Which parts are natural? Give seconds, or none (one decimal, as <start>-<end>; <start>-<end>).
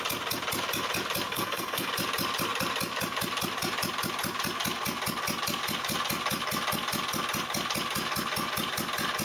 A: 0.0-1.3; 1.9-9.2